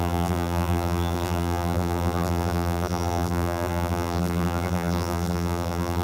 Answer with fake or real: fake